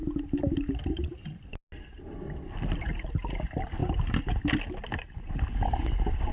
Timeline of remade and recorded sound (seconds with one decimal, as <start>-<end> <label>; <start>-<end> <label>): 0.0-3.8 recorded; 3.8-4.8 remade; 4.8-6.3 recorded